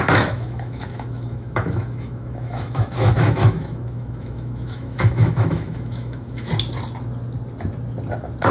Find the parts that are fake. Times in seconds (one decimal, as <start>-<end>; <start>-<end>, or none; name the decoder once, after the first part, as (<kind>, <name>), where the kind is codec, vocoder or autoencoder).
0.0-6.5 (autoencoder, DAC-VAE)